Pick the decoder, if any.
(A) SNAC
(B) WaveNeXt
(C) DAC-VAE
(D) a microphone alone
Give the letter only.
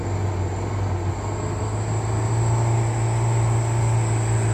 D